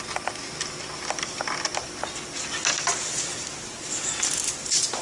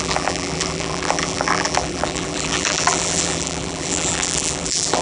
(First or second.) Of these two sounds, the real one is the first